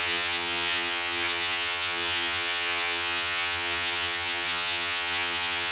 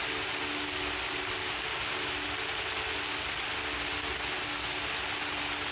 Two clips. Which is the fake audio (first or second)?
first